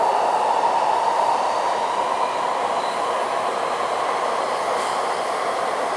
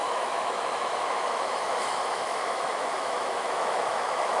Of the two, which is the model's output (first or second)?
second